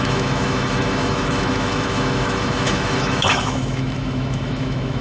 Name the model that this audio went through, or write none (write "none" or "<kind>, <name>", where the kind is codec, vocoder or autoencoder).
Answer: autoencoder, DAC-VAE